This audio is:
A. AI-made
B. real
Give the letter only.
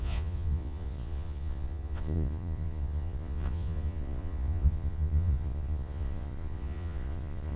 A